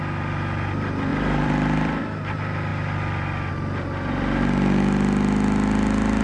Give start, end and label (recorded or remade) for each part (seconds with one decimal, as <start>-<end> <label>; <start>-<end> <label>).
0.0-1.1 recorded; 1.1-2.0 remade; 2.0-6.2 recorded